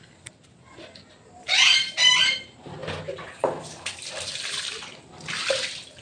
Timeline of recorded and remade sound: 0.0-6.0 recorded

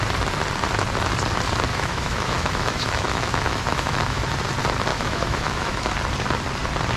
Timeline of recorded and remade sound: 0.0-1.7 recorded; 1.7-4.2 remade; 4.2-4.9 recorded; 4.9-5.9 remade; 5.9-7.0 recorded